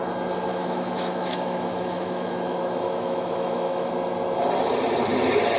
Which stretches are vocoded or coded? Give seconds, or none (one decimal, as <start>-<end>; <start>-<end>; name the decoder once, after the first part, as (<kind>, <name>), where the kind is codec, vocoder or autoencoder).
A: 0.5-3.9 (autoencoder, DAC-VAE)